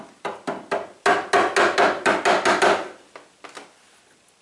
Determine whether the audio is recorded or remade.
recorded